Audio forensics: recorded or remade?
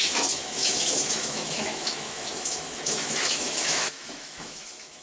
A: remade